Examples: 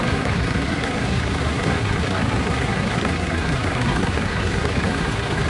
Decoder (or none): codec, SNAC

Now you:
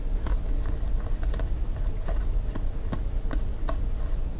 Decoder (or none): none